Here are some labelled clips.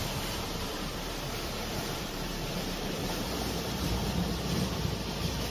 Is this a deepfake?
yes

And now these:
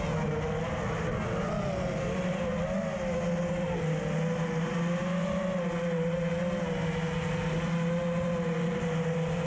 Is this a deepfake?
no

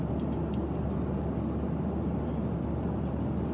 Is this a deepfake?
no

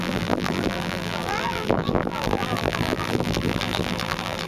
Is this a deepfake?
yes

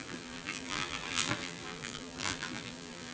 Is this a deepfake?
yes